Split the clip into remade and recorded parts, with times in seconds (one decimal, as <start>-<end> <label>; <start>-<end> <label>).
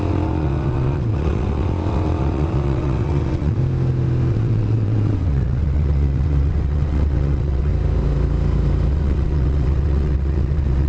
0.0-3.6 remade; 3.6-4.3 recorded; 4.3-7.7 remade; 7.7-8.9 recorded; 8.9-10.9 remade